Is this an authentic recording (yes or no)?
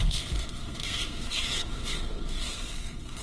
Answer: no